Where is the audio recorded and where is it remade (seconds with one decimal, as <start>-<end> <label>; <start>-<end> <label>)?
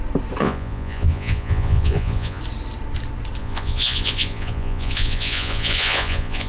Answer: 0.0-0.4 recorded; 0.4-2.4 remade; 2.4-3.4 recorded; 3.4-6.5 remade